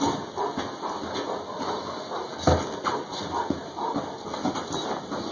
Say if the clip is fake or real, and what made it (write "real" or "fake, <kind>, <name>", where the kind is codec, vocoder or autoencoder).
real